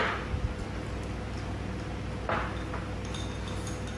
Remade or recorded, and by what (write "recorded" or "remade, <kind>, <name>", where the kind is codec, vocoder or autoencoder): recorded